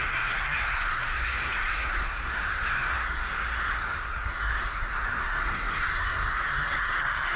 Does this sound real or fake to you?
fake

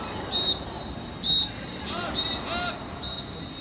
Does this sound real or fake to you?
real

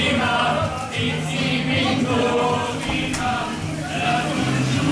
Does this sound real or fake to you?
real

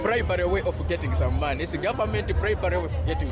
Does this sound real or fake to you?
real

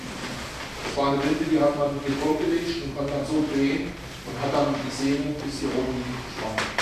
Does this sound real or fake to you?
real